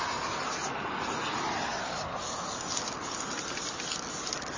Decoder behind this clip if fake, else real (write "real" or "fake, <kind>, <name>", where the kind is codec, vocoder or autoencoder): real